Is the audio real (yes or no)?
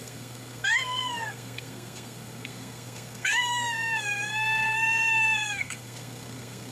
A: no